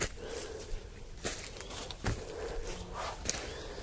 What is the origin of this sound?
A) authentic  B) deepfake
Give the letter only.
A